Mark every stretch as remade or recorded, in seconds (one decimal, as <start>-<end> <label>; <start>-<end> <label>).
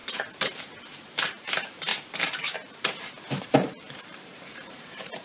0.0-1.9 remade; 1.9-3.4 recorded; 3.4-5.2 remade